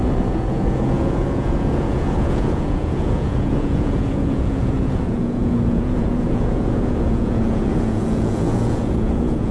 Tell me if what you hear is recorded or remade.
remade